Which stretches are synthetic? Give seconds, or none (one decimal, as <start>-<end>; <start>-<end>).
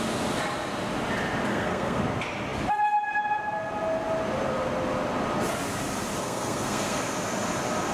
1.5-2.0; 6.2-7.0